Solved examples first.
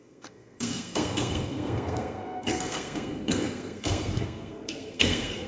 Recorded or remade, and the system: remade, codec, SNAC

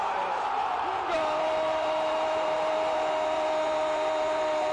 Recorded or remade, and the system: remade, vocoder, BigVGAN v2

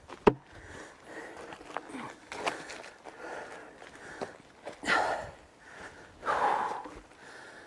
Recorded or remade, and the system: recorded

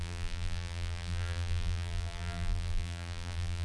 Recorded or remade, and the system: remade, vocoder, BigVGAN v2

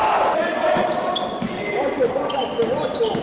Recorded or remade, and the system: recorded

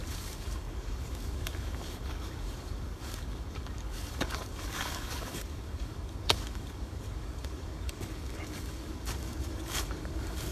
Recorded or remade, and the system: remade, codec, DAC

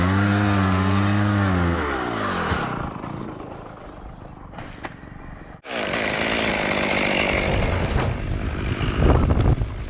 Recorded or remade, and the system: recorded